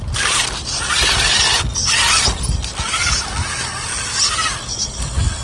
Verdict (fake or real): real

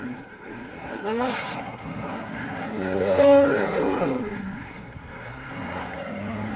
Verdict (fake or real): fake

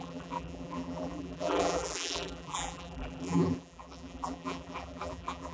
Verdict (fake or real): fake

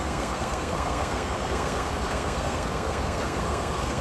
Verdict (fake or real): fake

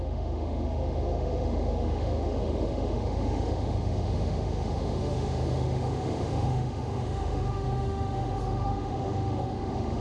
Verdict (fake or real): fake